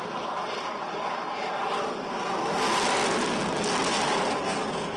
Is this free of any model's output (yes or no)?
yes